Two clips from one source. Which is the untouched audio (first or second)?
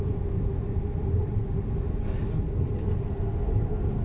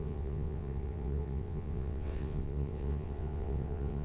first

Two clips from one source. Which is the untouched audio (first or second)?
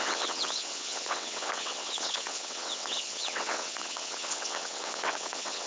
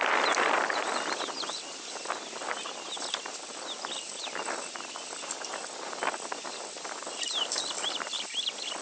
second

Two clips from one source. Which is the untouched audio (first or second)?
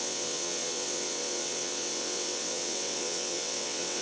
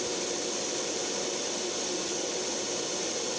second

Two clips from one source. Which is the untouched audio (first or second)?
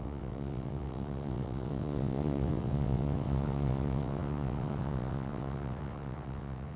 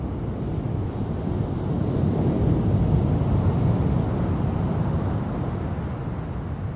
second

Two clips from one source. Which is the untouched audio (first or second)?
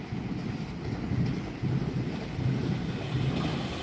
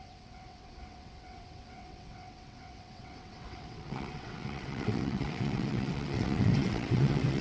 first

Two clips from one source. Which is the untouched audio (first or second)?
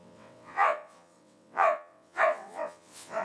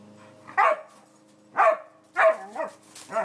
second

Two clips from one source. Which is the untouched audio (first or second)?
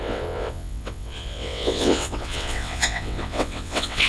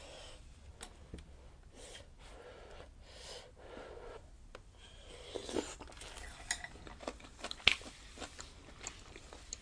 second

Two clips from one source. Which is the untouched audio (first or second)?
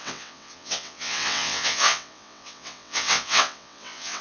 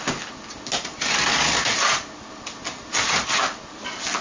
second